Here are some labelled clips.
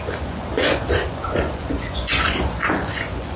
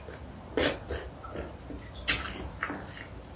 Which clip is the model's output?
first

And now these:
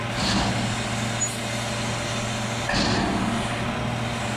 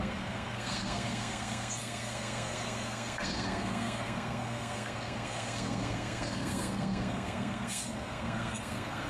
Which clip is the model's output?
second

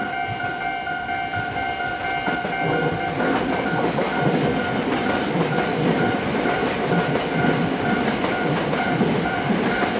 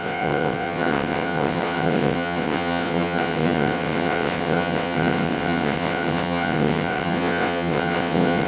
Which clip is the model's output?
second